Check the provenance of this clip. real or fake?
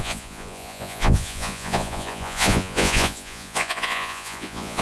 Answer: fake